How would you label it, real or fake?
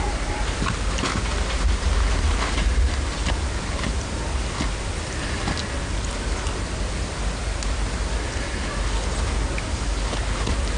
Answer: real